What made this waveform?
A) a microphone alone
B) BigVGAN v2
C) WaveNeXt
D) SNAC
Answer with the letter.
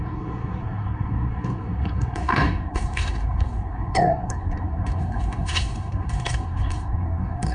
D